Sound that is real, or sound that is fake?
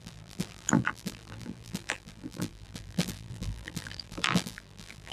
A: fake